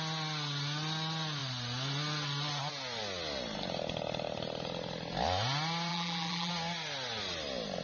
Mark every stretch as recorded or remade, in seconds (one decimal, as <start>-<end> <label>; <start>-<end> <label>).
0.0-5.9 recorded; 5.9-6.5 remade; 6.5-7.8 recorded